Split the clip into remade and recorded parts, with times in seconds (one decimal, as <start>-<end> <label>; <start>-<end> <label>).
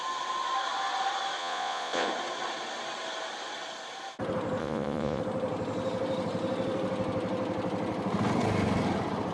0.0-1.4 recorded; 1.4-2.1 remade; 2.1-4.6 recorded; 4.6-5.2 remade; 5.2-9.3 recorded